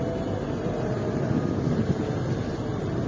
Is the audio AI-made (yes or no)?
no